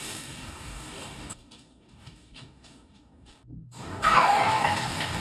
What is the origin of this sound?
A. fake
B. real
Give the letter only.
A